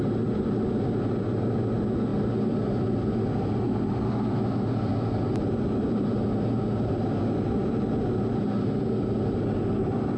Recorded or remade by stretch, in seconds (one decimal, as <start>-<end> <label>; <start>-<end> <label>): 0.0-10.2 recorded